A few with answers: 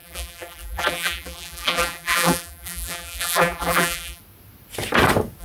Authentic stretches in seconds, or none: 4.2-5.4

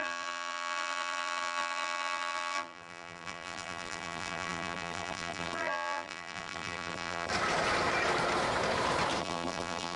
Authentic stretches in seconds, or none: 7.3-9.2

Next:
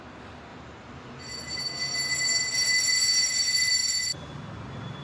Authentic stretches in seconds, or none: 0.0-0.5; 1.6-3.8; 4.3-5.0